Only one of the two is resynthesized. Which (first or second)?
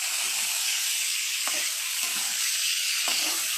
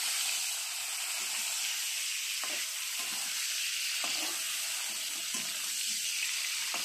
first